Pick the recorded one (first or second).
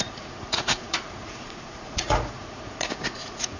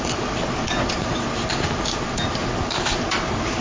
second